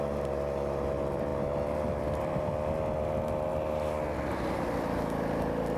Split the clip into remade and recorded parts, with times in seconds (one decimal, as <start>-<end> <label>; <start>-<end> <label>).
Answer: 0.0-5.8 recorded